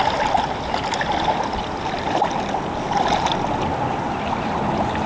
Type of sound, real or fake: real